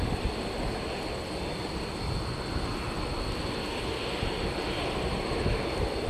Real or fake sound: real